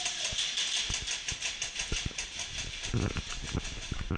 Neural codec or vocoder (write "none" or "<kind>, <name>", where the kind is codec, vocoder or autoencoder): none